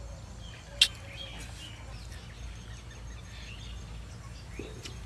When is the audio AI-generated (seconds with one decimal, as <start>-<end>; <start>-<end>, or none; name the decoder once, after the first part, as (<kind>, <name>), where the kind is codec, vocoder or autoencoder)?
none